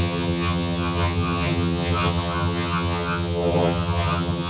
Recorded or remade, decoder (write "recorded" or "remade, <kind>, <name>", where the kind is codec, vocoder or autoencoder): remade, vocoder, HiFi-GAN